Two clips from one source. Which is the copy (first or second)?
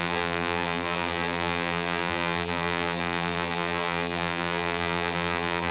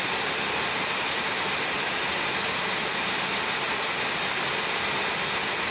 first